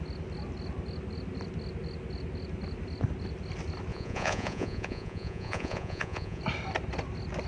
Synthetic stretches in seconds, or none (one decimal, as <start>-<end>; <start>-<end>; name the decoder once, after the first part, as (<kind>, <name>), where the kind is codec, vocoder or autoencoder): 3.9-6.4 (vocoder, Vocos)